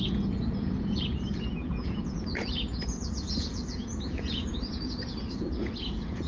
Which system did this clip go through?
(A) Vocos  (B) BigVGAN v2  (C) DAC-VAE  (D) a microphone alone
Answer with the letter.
A